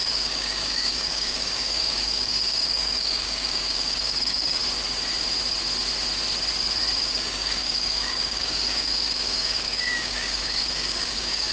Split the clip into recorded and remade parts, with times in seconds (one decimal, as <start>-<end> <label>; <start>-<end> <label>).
0.0-4.6 remade; 4.6-7.0 recorded; 7.0-11.5 remade